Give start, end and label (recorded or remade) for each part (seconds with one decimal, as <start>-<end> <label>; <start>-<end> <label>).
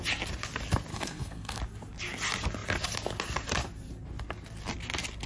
0.0-0.9 recorded; 0.9-1.6 remade; 1.6-5.3 recorded